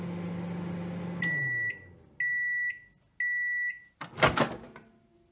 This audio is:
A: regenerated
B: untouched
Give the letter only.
B